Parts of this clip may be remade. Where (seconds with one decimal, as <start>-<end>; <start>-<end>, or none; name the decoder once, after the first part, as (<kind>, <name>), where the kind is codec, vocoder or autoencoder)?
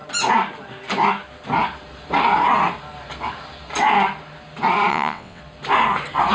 4.9-5.4 (vocoder, WaveNeXt)